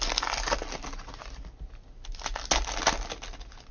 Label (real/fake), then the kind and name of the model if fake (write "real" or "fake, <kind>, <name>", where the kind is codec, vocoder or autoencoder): real